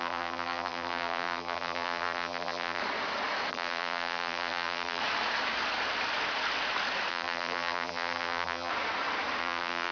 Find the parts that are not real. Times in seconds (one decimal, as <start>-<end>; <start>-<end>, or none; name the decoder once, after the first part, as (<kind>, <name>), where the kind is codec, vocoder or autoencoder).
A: 0.0-2.8 (vocoder, BigVGAN v2); 3.5-5.0; 7.1-8.7; 9.4-9.9